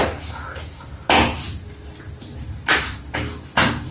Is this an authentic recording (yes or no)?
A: yes